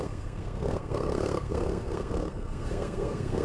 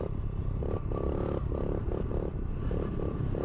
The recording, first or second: second